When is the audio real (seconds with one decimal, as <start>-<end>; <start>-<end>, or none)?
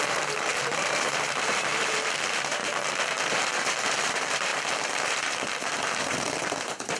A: 2.6-3.2